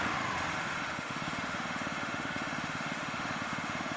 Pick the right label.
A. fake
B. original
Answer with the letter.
A